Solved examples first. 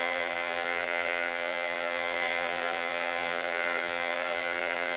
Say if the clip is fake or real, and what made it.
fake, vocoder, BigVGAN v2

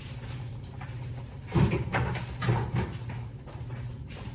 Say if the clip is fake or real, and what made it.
fake, vocoder, BigVGAN v2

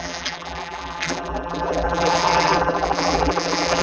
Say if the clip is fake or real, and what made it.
fake, vocoder, BigVGAN v2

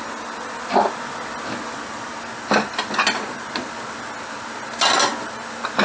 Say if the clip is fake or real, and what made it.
real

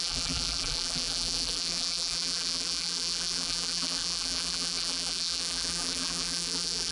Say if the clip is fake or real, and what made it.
fake, vocoder, BigVGAN v2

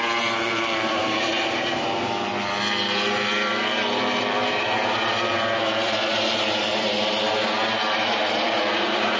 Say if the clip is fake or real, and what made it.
fake, vocoder, BigVGAN v2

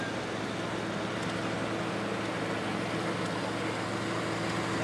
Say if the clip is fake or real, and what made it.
real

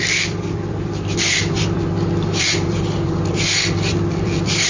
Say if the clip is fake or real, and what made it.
fake, vocoder, BigVGAN v2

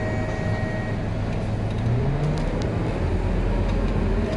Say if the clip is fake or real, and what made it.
real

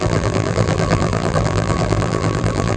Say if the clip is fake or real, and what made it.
fake, vocoder, BigVGAN v2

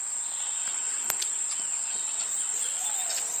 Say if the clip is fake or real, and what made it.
real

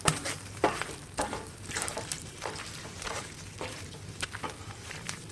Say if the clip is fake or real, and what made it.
fake, vocoder, BigVGAN v2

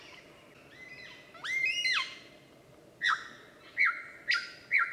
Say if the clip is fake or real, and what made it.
real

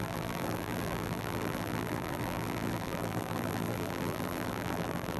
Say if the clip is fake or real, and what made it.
fake, vocoder, BigVGAN v2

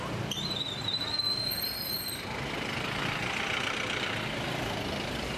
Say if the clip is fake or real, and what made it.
fake, vocoder, BigVGAN v2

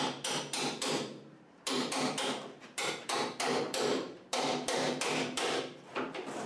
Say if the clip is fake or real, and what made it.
fake, vocoder, BigVGAN v2